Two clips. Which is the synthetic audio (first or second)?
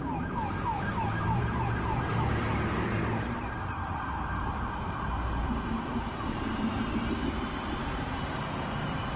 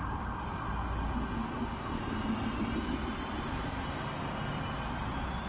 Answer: first